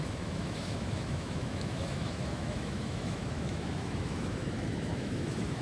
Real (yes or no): no